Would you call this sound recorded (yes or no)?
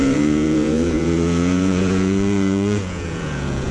no